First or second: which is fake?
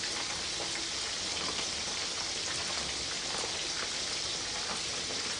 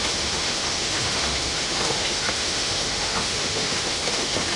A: second